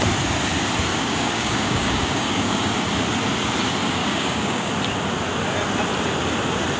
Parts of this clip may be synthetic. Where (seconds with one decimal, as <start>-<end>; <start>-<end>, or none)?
0.9-2.7; 4.0-4.7